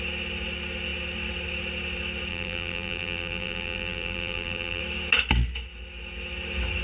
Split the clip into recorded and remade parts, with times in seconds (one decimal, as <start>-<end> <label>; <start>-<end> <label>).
0.0-2.3 recorded; 2.3-4.8 remade; 4.8-6.8 recorded